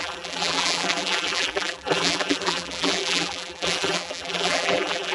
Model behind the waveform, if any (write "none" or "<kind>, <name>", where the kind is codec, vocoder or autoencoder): vocoder, BigVGAN v2